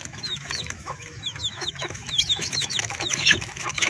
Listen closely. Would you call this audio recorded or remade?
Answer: remade